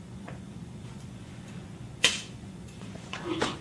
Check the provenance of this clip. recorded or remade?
remade